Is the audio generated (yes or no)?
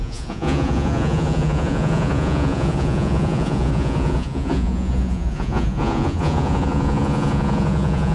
yes